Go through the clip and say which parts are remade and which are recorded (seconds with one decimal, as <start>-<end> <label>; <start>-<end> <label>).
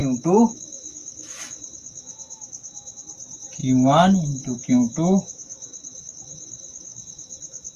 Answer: 0.0-3.0 remade; 3.0-3.6 recorded; 3.6-7.8 remade